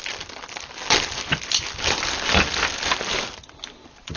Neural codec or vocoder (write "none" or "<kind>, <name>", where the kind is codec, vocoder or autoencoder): none